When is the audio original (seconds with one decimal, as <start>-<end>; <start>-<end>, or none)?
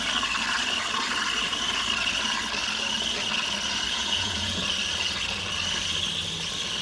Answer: 0.0-3.9; 4.6-6.8